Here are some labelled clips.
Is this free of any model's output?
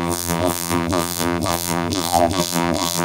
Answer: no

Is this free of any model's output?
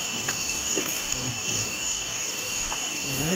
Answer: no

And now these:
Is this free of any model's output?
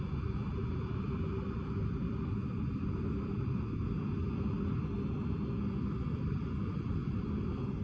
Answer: no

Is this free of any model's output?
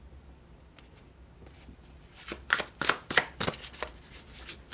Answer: yes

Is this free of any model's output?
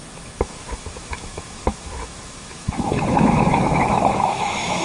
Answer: no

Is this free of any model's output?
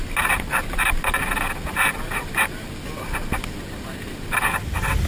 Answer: yes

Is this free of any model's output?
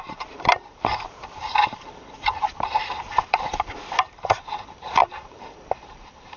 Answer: no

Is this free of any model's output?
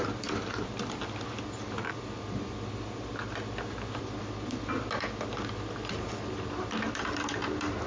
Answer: yes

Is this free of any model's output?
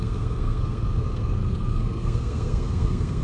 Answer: no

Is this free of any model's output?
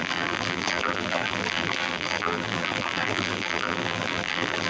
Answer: no